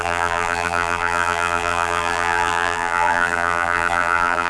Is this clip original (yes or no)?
no